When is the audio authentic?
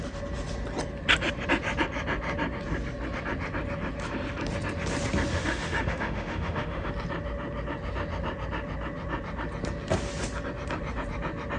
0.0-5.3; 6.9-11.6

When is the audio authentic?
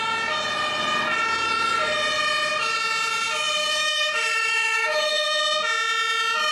0.0-3.6; 5.4-6.5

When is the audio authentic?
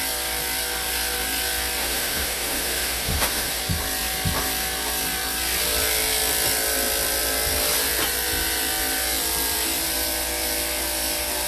0.0-1.8; 3.6-11.5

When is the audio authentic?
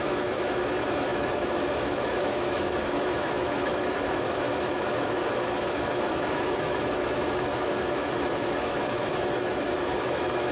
none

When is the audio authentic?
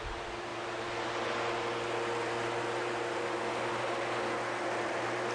0.0-5.3